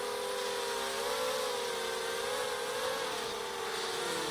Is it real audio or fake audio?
real